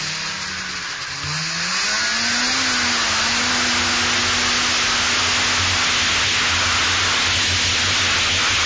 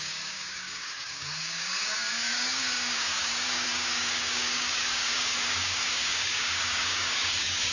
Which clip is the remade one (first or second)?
second